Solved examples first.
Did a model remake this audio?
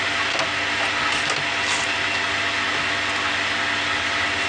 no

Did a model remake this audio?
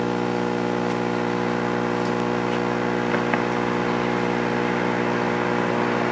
no